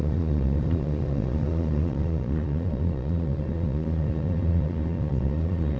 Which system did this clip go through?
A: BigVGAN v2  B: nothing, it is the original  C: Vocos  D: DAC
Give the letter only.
C